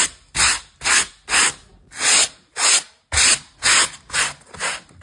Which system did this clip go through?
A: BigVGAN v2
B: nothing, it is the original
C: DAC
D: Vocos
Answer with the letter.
B